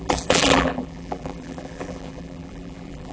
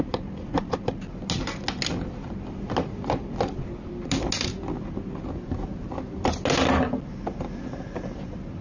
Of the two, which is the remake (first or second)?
first